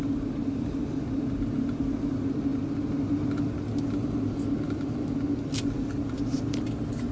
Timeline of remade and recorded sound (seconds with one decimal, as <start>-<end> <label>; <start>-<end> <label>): 0.0-7.1 recorded